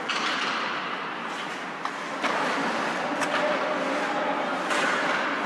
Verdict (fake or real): real